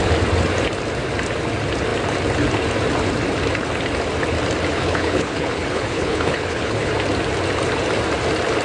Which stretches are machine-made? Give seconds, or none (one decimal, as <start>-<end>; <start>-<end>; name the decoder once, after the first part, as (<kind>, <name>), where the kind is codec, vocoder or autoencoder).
4.7-6.9 (codec, HILCodec)

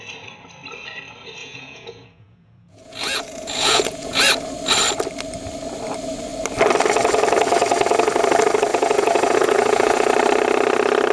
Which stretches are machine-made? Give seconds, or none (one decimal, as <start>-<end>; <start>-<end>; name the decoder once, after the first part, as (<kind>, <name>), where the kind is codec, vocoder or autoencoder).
1.4-4.2 (vocoder, Vocos); 8.7-10.1

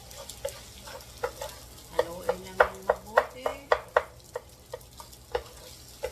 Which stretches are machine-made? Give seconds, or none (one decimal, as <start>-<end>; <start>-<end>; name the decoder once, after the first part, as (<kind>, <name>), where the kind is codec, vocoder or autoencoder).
3.5-4.8 (vocoder, BigVGAN v2)

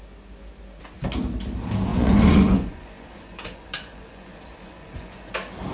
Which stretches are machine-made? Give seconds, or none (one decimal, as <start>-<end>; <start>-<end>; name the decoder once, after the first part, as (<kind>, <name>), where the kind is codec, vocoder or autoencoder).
1.9-5.2 (vocoder, Vocos)

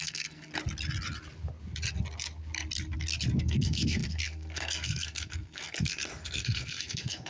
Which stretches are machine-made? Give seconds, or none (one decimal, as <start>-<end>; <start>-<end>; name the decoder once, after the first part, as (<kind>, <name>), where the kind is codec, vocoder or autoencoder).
0.0-0.5 (codec, SNAC); 3.4-7.3

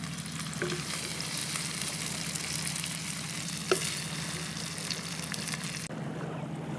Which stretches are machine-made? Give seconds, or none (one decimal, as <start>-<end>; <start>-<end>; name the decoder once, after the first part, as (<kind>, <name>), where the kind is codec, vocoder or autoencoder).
none

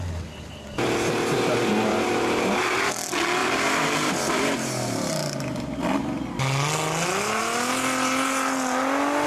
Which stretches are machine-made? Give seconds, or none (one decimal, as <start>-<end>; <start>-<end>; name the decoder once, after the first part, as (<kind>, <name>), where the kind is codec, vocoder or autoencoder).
1.9-2.9 (vocoder, BigVGAN v2); 3.4-5.1